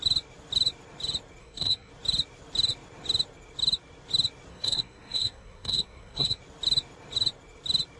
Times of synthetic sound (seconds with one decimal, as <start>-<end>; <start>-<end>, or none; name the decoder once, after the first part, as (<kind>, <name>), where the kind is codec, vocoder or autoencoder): 1.4-1.9 (codec, SNAC); 4.5-6.4